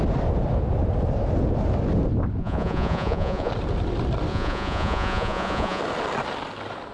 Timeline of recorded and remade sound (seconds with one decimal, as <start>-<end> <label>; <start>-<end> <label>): 0.0-2.4 recorded; 2.4-3.5 remade; 3.5-4.3 recorded; 4.3-5.8 remade; 5.8-6.9 recorded